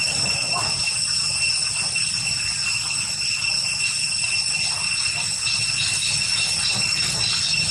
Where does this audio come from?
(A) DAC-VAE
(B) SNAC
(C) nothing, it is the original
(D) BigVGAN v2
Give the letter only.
C